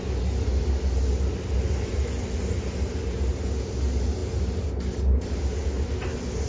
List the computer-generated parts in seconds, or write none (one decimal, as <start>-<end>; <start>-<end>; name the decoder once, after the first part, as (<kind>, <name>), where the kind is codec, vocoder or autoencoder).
none